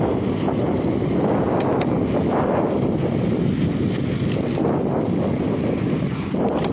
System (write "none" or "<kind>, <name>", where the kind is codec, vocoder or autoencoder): none